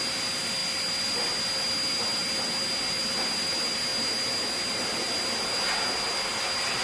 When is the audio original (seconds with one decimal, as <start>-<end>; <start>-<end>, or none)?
0.0-6.8